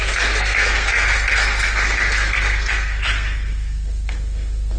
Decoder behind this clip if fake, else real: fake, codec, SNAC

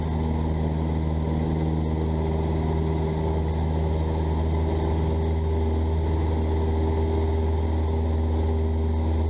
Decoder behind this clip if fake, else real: real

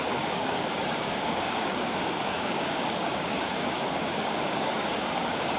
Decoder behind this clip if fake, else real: fake, codec, DAC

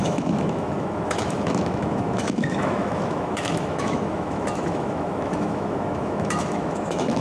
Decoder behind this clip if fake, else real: fake, autoencoder, DAC-VAE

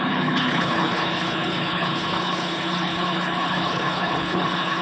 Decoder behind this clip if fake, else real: fake, codec, HILCodec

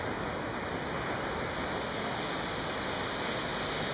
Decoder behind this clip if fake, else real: real